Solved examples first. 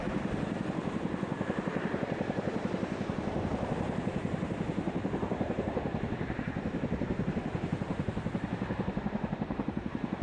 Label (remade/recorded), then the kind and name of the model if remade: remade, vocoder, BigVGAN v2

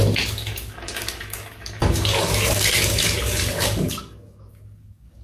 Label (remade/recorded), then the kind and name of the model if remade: remade, codec, DAC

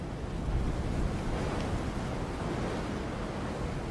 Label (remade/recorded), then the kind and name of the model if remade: recorded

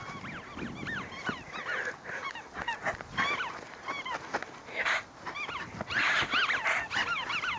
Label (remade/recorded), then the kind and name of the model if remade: recorded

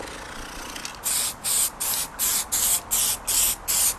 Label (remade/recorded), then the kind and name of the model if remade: recorded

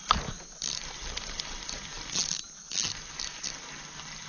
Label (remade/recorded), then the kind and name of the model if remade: recorded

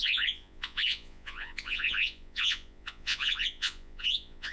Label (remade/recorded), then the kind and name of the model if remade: remade, vocoder, Vocos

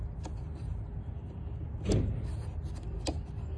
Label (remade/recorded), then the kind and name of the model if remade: recorded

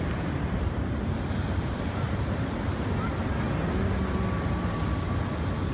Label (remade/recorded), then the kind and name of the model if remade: recorded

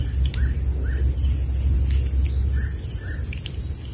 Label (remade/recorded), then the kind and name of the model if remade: recorded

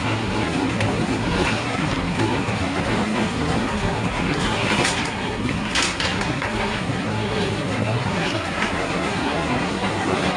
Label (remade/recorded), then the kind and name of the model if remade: remade, codec, SNAC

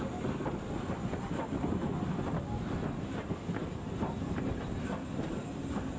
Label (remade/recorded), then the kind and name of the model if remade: recorded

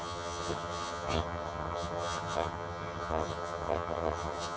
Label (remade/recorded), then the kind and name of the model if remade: remade, vocoder, HiFi-GAN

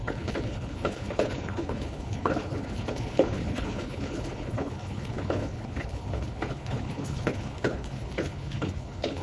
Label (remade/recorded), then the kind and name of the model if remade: remade, codec, HILCodec